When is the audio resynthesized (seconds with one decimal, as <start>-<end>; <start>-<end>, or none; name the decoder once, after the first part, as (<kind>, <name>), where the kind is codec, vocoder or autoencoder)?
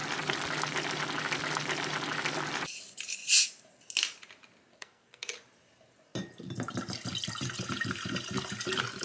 4.7-5.3 (codec, SNAC)